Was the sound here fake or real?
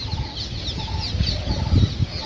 real